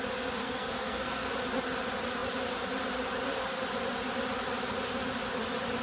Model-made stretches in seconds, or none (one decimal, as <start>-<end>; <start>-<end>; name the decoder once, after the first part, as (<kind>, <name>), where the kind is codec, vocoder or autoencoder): 0.4-1.3 (codec, SNAC)